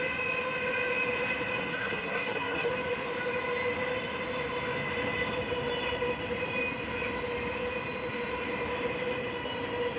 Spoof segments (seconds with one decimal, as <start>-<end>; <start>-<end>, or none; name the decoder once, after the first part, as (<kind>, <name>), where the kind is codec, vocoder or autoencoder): 1.7-2.7 (codec, SNAC)